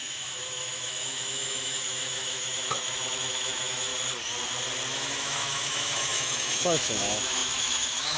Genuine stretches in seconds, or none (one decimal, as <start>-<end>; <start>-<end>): 3.9-4.9